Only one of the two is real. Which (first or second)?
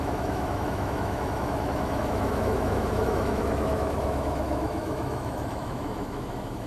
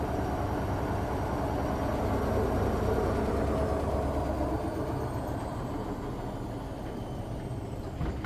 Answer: second